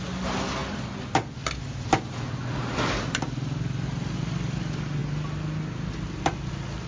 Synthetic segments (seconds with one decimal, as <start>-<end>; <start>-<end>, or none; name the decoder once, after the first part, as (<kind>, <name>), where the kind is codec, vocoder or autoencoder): none